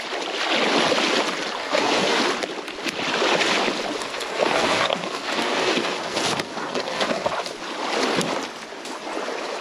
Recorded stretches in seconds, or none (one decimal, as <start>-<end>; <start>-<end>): 0.0-1.6; 2.2-4.0; 7.3-9.6